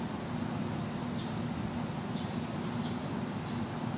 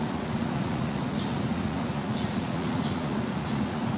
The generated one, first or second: second